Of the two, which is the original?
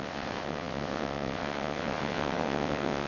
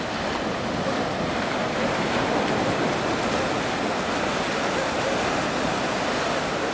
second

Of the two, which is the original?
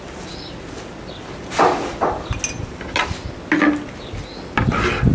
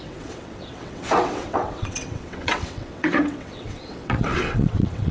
first